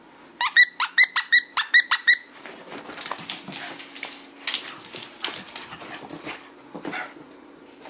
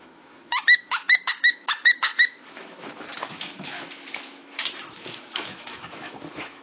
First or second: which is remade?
second